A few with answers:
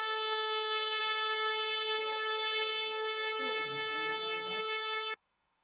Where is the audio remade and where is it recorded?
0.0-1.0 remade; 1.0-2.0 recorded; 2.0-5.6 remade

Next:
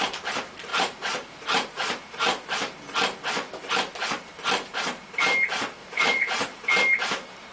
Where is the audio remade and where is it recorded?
0.0-0.7 recorded; 0.7-2.0 remade; 2.0-5.8 recorded; 5.8-6.6 remade; 6.6-7.5 recorded

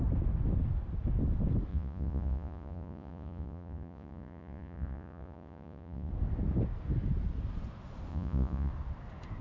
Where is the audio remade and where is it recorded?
0.0-1.7 recorded; 1.7-6.1 remade; 6.1-8.1 recorded; 8.1-8.7 remade; 8.7-9.4 recorded

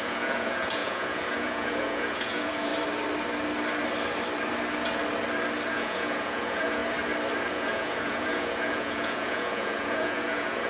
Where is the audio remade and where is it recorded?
0.0-2.7 remade; 2.7-5.7 recorded; 5.7-6.8 remade; 6.8-7.5 recorded; 7.5-10.7 remade

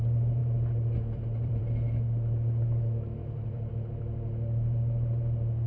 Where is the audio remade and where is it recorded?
0.0-0.4 recorded; 0.4-1.6 remade; 1.6-3.2 recorded; 3.2-3.7 remade; 3.7-5.7 recorded

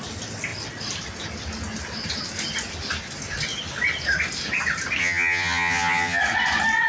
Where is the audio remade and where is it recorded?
0.0-5.0 recorded; 5.0-6.2 remade; 6.2-6.9 recorded

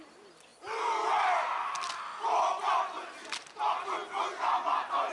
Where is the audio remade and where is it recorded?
0.0-5.1 recorded

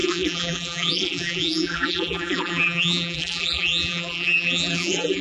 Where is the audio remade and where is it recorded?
0.0-5.2 remade